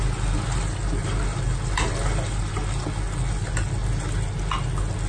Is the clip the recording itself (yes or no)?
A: yes